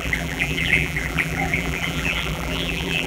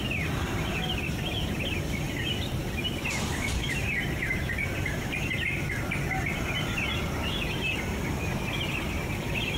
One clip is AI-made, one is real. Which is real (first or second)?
second